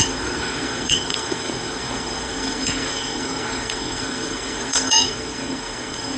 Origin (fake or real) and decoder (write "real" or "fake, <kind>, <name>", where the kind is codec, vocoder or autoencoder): fake, codec, SNAC